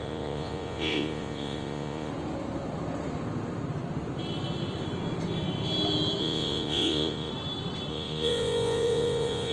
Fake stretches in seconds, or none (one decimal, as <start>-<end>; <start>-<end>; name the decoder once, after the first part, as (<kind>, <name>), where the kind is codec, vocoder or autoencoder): 0.0-2.1 (vocoder, Vocos); 6.2-7.3; 7.9-9.5